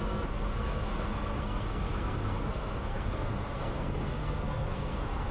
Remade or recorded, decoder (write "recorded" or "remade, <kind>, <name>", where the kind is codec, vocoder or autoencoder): remade, codec, SNAC